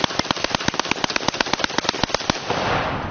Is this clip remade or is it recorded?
recorded